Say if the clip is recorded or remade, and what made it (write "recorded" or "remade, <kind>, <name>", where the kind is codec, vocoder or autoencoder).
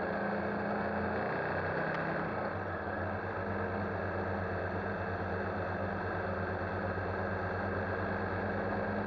recorded